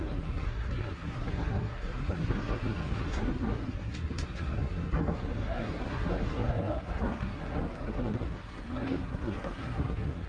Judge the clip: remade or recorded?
remade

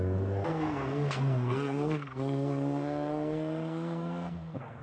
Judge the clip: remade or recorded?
remade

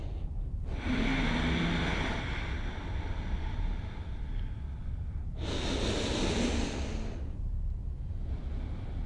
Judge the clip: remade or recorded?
recorded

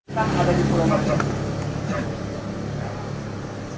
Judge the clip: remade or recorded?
recorded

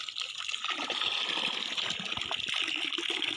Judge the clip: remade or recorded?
recorded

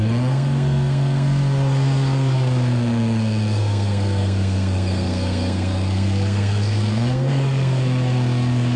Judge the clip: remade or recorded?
remade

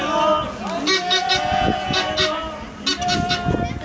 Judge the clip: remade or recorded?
recorded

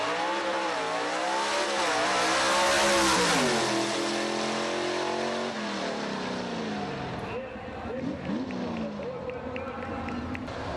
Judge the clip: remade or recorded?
recorded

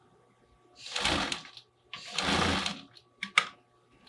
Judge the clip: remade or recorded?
recorded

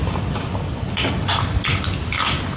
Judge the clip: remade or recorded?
recorded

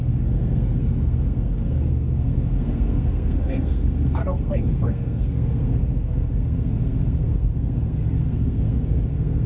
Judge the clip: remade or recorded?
remade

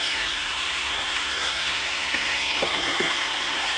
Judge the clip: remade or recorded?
remade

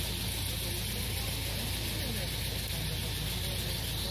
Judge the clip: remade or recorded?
recorded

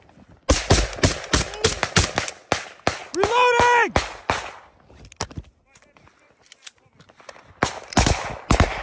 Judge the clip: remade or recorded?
recorded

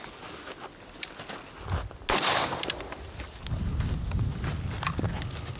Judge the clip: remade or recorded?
recorded